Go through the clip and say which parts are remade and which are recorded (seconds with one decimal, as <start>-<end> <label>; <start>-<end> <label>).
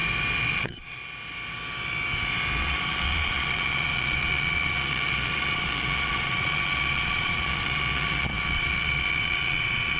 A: 0.0-0.5 recorded; 0.5-1.0 remade; 1.0-2.6 recorded; 2.6-10.0 remade